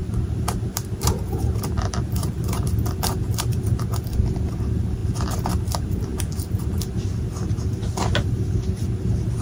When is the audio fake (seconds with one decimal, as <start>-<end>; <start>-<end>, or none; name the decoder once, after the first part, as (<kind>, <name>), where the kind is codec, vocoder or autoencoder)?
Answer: 0.0-3.8 (vocoder, BigVGAN v2); 6.1-7.0